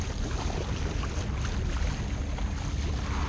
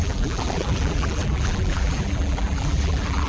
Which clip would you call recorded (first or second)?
first